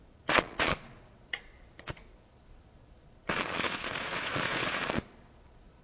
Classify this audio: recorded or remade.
remade